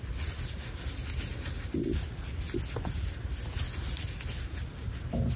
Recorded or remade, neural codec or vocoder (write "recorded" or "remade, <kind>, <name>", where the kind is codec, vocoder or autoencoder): recorded